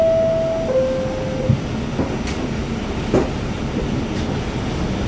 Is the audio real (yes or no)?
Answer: yes